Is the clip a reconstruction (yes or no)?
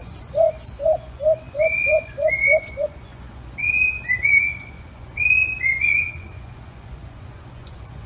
yes